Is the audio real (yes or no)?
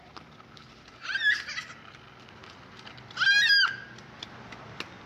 yes